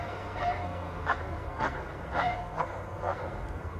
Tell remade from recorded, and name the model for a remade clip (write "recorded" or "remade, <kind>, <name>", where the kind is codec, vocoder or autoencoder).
remade, codec, SNAC